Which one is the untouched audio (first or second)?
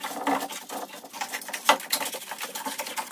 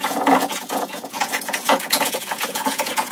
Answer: first